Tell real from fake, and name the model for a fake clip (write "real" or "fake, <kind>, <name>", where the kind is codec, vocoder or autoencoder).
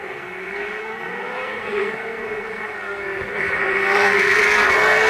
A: fake, codec, SNAC